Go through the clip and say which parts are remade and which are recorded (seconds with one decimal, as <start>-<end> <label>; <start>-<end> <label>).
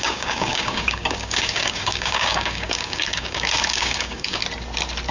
0.0-4.4 remade; 4.4-5.1 recorded